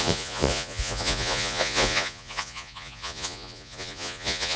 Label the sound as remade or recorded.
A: remade